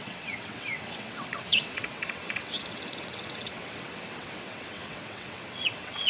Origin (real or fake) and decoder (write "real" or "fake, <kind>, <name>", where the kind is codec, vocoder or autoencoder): fake, vocoder, WaveNeXt